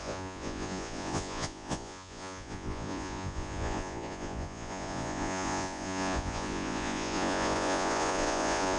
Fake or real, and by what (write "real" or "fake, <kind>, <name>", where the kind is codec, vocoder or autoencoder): fake, vocoder, Vocos